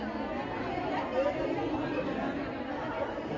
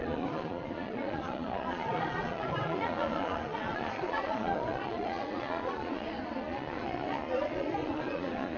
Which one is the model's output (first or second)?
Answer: second